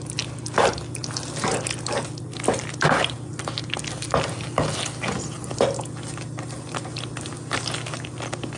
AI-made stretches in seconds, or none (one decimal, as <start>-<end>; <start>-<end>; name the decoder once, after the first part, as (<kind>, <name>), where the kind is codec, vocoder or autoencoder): none